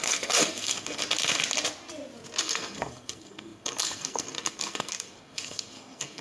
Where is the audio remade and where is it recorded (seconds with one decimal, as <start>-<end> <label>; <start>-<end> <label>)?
0.0-1.0 remade; 1.0-2.4 recorded; 2.4-6.2 remade